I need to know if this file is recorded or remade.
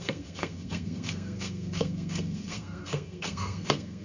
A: remade